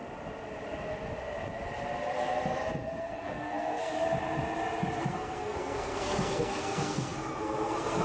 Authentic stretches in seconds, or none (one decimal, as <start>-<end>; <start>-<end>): 0.0-3.0; 3.9-5.0